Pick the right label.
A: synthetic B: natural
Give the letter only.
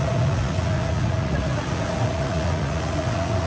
A